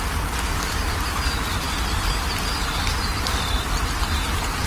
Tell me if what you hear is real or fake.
real